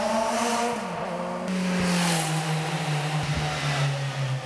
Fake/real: real